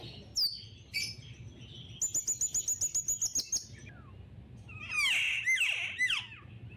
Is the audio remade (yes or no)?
no